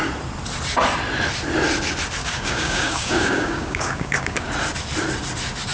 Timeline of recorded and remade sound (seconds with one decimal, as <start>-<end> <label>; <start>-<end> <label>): 0.0-2.2 recorded; 2.2-4.5 remade; 4.5-5.7 recorded

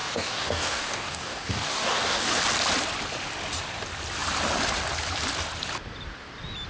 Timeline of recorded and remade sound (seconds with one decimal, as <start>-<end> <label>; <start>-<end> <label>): 0.0-2.3 remade; 2.3-6.7 recorded

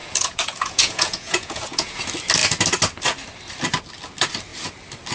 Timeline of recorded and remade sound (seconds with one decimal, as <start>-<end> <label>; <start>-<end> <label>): 0.0-2.0 remade; 2.0-5.1 recorded

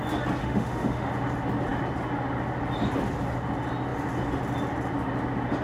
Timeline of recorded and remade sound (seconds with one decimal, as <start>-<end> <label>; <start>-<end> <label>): 0.0-0.4 recorded; 0.4-1.1 remade; 1.1-5.6 recorded

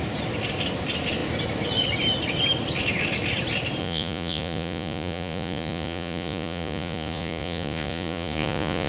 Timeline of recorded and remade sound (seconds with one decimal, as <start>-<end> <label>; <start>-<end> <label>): 0.0-3.8 recorded; 3.8-8.9 remade

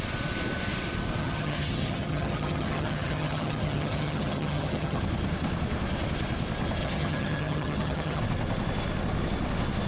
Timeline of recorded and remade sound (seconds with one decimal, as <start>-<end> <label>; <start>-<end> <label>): 0.0-1.2 recorded; 1.2-5.0 remade; 5.0-6.8 recorded; 6.8-8.2 remade; 8.2-9.9 recorded